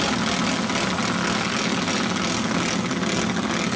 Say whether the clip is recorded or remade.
recorded